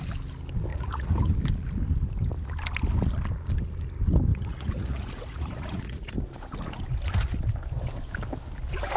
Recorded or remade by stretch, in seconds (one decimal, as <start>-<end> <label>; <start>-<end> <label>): 0.0-0.7 recorded; 0.7-1.3 remade; 1.3-4.3 recorded; 4.3-6.1 remade; 6.1-9.0 recorded